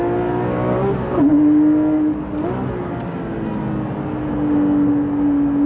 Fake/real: real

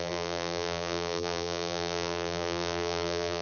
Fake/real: fake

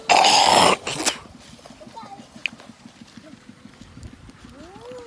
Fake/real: real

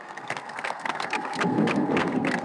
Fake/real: fake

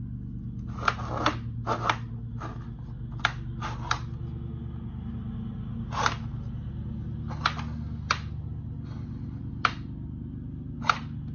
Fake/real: real